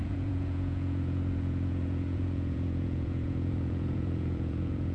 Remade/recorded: remade